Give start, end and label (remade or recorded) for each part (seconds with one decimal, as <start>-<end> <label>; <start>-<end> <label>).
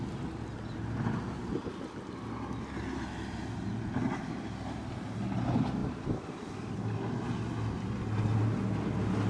0.0-9.3 recorded